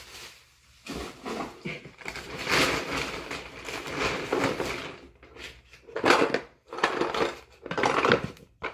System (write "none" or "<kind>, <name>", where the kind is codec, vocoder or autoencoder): none